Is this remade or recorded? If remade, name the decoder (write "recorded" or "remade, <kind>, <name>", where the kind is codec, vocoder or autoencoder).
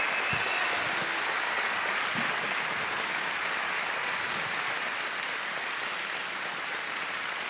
recorded